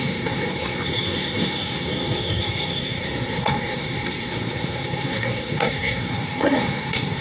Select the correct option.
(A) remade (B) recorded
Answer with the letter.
A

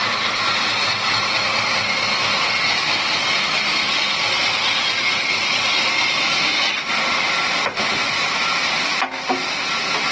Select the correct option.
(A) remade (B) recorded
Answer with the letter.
B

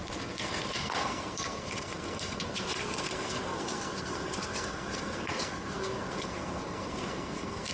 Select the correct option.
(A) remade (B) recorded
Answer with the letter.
A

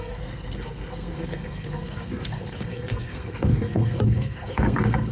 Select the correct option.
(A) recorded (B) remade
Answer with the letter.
B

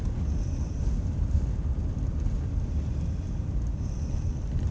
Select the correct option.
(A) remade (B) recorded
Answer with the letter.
B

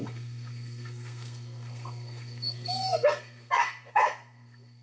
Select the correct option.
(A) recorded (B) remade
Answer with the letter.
B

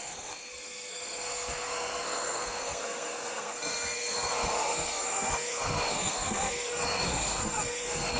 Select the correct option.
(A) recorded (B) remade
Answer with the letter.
B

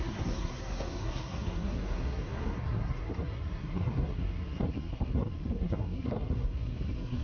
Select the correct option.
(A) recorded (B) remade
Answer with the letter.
B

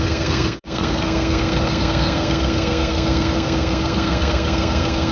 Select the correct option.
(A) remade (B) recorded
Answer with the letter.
A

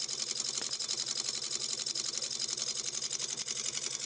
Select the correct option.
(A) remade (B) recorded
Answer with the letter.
B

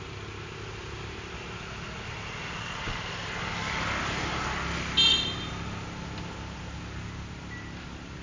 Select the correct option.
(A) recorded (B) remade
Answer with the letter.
A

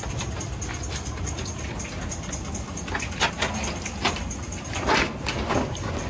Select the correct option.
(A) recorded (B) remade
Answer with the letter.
A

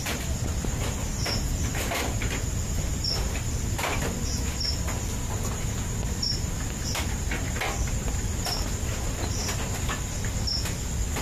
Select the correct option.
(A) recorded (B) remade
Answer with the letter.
A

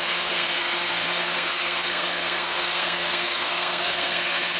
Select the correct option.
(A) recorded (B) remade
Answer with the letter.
B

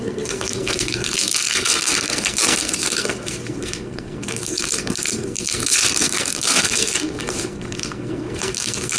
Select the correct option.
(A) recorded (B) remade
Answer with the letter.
B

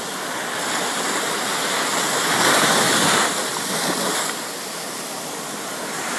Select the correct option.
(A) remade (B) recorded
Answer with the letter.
B